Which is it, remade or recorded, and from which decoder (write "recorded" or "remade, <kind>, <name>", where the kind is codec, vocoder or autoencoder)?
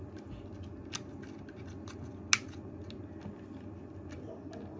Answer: recorded